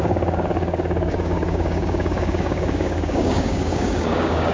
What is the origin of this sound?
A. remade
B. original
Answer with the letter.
A